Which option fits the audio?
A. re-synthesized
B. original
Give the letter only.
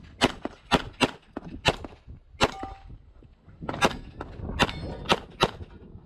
B